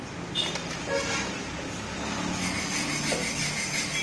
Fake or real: real